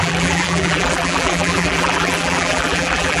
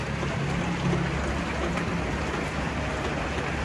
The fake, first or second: first